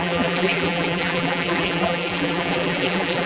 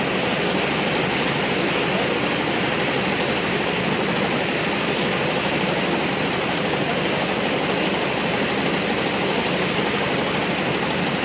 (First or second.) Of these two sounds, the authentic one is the second